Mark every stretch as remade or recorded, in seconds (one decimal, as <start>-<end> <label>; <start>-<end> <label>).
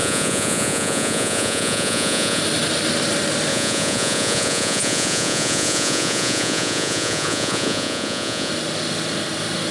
0.0-2.4 remade; 2.4-3.5 recorded; 3.5-8.5 remade; 8.5-9.7 recorded